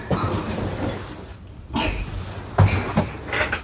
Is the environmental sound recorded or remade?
recorded